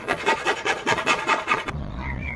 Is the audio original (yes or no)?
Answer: no